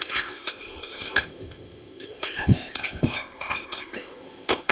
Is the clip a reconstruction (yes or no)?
yes